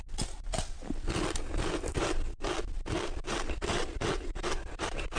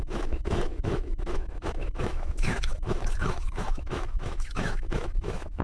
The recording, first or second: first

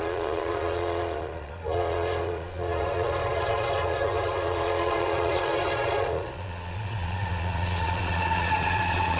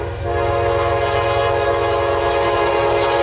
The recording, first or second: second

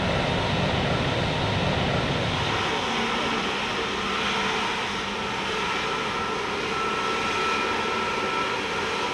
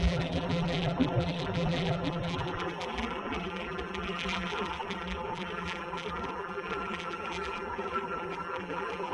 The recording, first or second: first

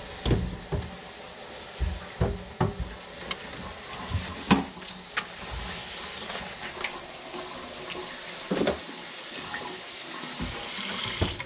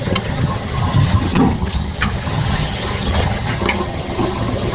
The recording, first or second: first